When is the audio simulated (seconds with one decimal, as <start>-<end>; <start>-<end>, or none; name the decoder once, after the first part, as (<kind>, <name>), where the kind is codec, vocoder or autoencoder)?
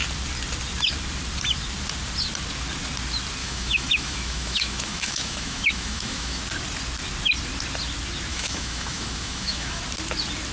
3.4-6.4 (autoencoder, DAC-VAE); 8.3-9.8